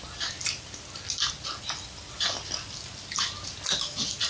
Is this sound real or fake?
real